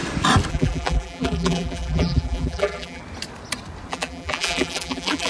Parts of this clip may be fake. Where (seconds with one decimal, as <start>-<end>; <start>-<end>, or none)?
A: 0.5-3.0; 3.9-5.3